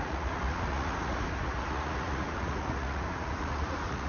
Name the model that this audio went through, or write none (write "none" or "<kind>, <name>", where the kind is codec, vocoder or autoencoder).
vocoder, Vocos